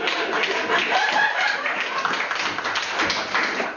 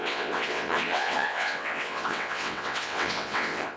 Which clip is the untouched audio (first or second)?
first